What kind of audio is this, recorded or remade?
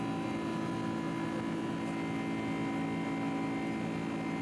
recorded